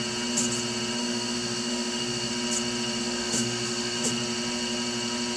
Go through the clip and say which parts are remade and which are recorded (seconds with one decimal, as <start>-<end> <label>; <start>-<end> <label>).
0.0-1.0 recorded; 1.0-2.3 remade; 2.3-3.0 recorded; 3.0-4.0 remade; 4.0-5.4 recorded